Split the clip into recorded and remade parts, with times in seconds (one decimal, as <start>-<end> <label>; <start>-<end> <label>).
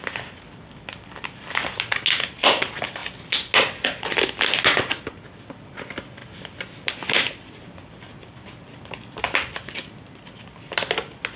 0.0-11.4 recorded